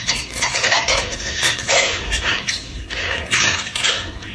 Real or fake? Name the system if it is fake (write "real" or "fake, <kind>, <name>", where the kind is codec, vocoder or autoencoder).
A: fake, codec, SNAC